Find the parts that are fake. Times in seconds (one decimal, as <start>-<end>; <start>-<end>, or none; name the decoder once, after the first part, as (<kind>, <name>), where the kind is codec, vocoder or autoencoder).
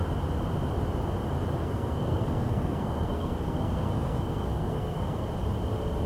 1.6-5.3 (codec, SNAC)